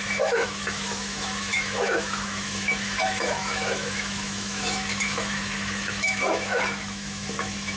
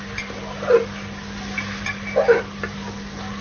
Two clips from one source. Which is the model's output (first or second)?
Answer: first